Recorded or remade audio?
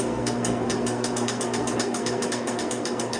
remade